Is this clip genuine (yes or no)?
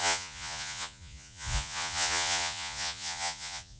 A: no